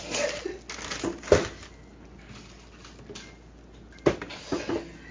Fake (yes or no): no